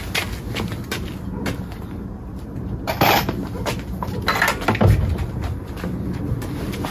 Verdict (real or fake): real